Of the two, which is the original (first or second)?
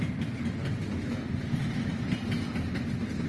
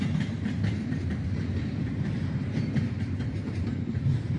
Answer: first